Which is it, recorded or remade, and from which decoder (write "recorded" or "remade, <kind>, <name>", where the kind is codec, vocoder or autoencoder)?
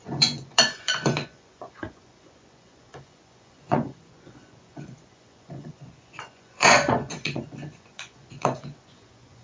remade, vocoder, Vocos